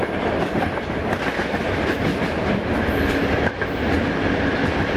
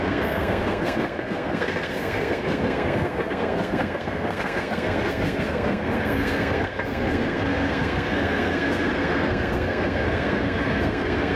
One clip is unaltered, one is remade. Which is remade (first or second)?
second